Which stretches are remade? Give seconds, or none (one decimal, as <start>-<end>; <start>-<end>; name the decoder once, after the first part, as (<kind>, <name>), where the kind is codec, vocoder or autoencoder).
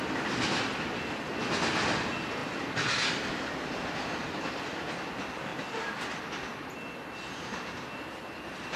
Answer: none